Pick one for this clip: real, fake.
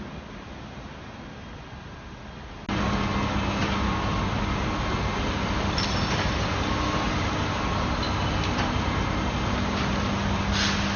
real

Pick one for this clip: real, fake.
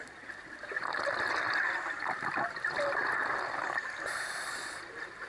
real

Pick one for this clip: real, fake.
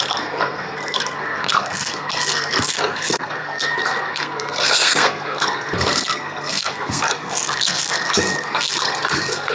fake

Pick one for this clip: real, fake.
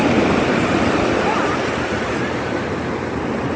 real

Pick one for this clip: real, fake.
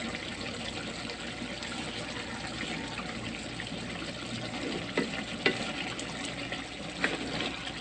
real